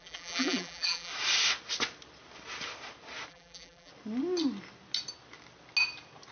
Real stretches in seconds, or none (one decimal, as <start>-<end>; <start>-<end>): 1.1-3.3; 3.9-6.3